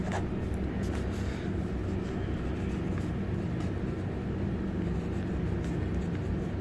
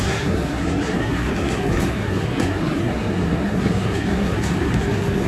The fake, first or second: second